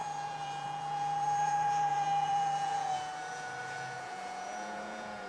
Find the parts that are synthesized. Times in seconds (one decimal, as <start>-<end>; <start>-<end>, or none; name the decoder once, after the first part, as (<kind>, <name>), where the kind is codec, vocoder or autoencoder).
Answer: 0.0-5.3 (vocoder, Vocos)